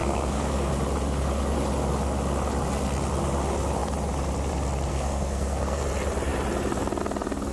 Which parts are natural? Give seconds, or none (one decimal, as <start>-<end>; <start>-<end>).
0.7-4.9; 5.8-7.5

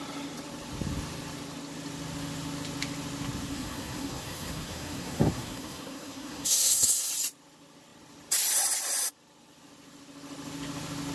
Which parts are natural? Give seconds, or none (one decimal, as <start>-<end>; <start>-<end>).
0.0-3.5; 7.1-11.1